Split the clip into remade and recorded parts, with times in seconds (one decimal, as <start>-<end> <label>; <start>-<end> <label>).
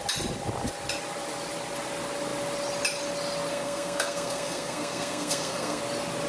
0.0-3.5 recorded; 3.5-5.8 remade; 5.8-6.3 recorded